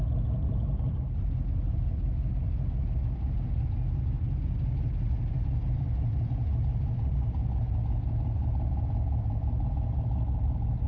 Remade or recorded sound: recorded